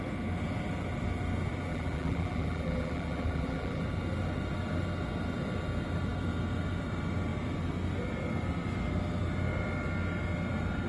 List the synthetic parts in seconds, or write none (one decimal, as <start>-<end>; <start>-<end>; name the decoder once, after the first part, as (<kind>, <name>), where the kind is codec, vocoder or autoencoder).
1.7-3.8 (vocoder, BigVGAN v2)